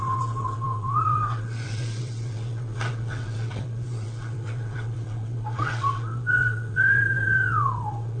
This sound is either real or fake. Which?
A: fake